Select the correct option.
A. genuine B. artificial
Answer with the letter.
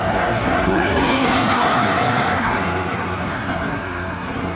B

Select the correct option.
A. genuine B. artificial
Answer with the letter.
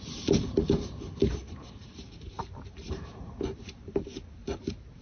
B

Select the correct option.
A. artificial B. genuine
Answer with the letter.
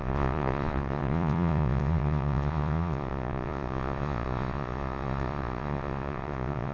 A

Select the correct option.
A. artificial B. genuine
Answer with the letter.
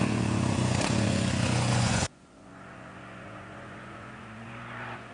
A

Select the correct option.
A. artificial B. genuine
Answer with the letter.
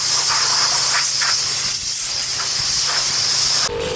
B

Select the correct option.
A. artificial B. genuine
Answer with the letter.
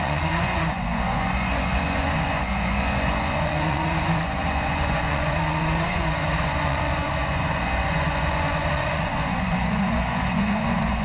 A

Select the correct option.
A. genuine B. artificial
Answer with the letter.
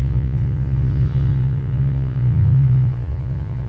B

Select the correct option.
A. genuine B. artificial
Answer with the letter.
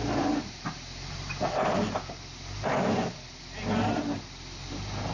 A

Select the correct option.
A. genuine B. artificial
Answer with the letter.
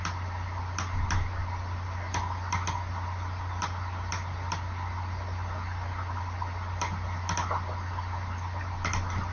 A